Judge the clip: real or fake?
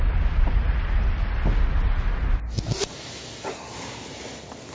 real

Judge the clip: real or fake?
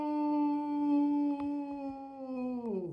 real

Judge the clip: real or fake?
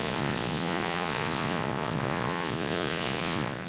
fake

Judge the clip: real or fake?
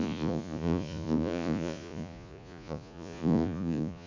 fake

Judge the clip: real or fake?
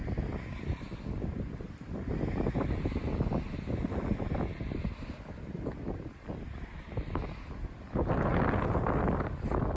real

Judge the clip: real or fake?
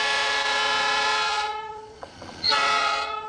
fake